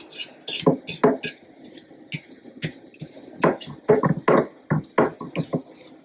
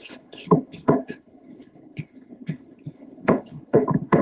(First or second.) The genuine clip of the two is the first